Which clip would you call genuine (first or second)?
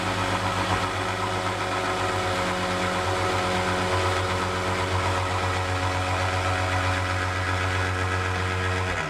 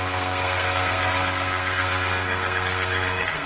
first